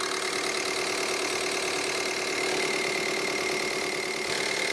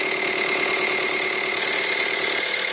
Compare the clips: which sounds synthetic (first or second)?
second